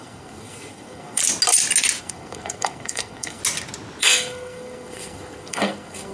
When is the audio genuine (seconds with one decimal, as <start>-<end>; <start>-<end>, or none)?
1.2-2.0; 3.4-4.0